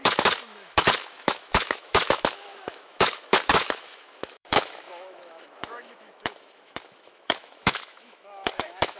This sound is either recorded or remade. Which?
remade